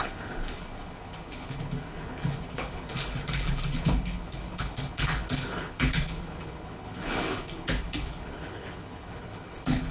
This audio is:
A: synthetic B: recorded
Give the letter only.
A